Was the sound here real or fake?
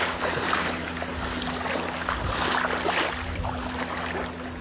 real